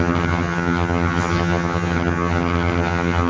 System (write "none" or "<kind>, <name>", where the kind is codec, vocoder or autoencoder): vocoder, HiFi-GAN